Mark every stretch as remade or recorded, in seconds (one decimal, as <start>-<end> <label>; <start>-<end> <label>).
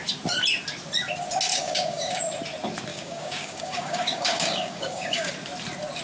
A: 0.0-1.5 recorded; 1.5-2.2 remade; 2.2-2.9 recorded; 2.9-5.3 remade; 5.3-6.0 recorded